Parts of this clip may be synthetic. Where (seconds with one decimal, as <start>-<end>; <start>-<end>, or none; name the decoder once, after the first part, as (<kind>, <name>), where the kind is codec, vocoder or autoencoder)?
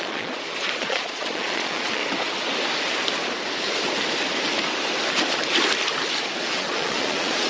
0.0-2.0 (vocoder, Vocos); 6.5-7.5